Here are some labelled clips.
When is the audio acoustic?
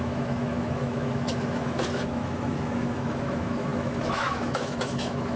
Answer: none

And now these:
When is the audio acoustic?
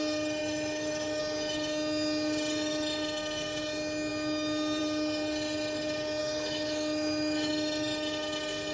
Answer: 0.0-0.4; 1.2-6.2; 7.5-8.7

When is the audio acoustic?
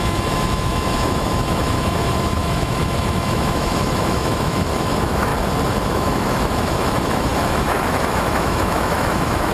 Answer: 5.3-5.8